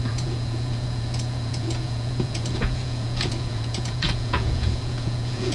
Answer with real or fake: fake